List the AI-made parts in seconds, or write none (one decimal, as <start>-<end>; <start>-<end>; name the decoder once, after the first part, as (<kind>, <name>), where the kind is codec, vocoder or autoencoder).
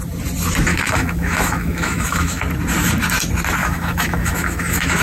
0.7-2.4 (autoencoder, DAC-VAE); 3.6-5.0